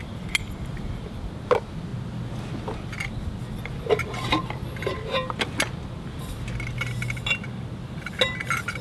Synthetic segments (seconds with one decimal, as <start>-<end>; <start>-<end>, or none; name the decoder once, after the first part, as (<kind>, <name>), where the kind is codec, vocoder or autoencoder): none